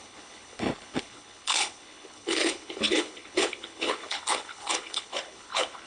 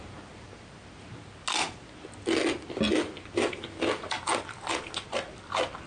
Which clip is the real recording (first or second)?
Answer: second